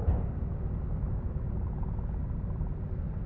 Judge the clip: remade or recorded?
recorded